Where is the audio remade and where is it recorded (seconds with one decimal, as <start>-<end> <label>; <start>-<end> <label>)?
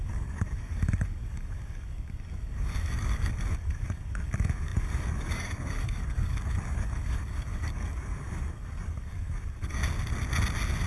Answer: 0.0-9.8 remade; 9.8-10.9 recorded